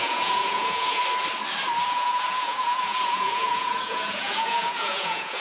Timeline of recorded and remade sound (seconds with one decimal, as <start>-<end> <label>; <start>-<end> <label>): 0.0-1.0 remade; 1.0-1.8 recorded; 1.8-5.4 remade